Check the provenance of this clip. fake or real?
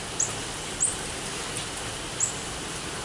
real